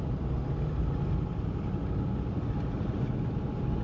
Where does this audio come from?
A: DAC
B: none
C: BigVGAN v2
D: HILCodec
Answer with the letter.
B